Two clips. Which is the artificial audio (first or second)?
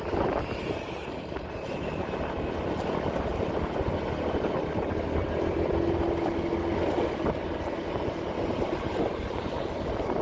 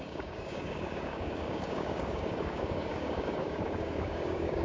second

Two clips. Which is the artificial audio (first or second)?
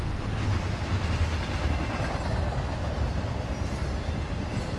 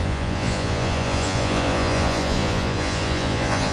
second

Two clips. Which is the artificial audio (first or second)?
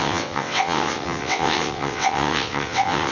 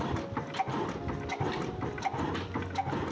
first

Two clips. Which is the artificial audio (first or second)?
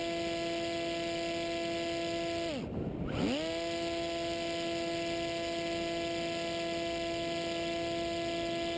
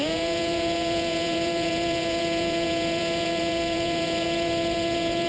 second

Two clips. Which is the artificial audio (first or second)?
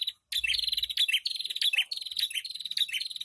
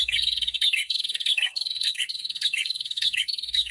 second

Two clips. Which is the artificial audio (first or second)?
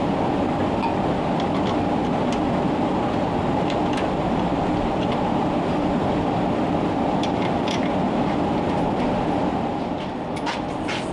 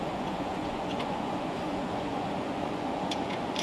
second